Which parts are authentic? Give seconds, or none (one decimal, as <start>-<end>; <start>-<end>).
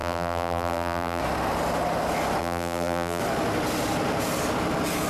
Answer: 1.2-2.4; 3.2-5.1